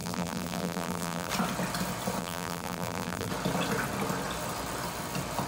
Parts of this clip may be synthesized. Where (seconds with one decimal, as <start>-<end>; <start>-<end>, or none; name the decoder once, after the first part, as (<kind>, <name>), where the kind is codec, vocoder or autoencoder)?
0.0-1.3 (vocoder, BigVGAN v2); 2.2-3.3